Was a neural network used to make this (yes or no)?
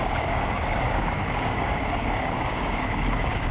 yes